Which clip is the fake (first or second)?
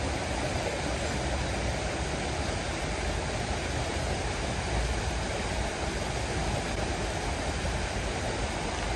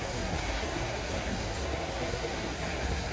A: second